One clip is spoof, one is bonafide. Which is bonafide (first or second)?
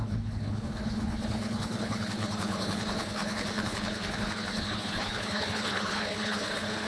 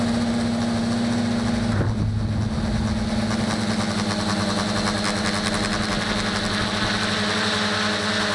second